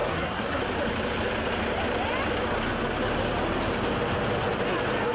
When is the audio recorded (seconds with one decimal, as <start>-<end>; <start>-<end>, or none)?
0.6-5.1